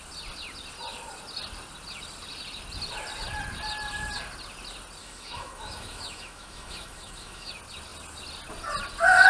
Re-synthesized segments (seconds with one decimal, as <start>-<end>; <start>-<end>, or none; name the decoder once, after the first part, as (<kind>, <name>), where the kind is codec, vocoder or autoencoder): 5.0-7.5 (autoencoder, DAC-VAE)